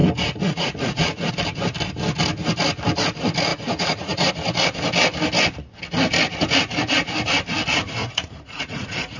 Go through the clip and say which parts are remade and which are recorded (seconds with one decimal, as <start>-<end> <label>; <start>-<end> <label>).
0.0-1.3 remade; 1.3-3.5 recorded; 3.5-4.3 remade; 4.3-8.0 recorded; 8.0-9.2 remade